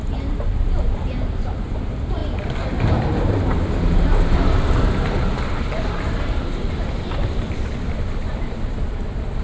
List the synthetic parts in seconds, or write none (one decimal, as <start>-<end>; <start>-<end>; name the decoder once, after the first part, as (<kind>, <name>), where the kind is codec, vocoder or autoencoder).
0.0-9.4 (vocoder, BigVGAN v2)